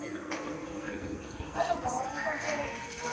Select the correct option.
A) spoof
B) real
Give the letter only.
A